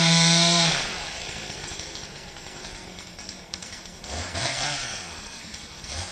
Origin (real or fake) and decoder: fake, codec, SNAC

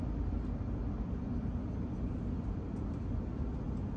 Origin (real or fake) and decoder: real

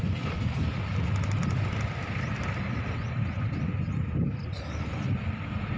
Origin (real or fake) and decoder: real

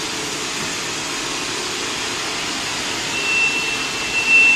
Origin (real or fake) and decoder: real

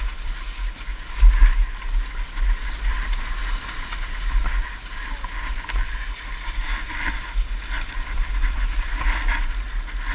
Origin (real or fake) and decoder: real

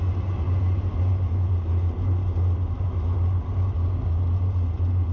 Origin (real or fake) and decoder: real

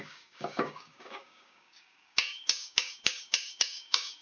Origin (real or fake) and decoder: fake, codec, DAC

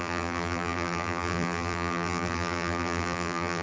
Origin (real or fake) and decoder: fake, vocoder, BigVGAN v2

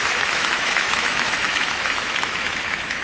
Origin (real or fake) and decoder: fake, autoencoder, DAC-VAE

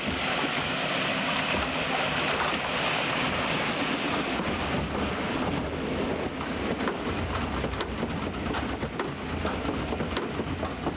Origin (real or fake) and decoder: real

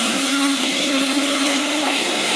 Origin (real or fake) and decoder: fake, codec, SNAC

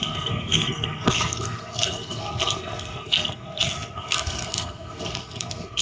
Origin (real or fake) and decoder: fake, codec, SNAC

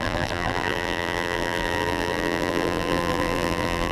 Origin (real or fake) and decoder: fake, vocoder, BigVGAN v2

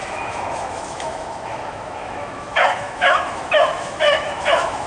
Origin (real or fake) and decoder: fake, autoencoder, DAC-VAE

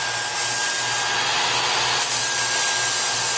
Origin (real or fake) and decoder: real